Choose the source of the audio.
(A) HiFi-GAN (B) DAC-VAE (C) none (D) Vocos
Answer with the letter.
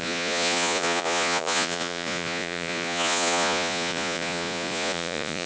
D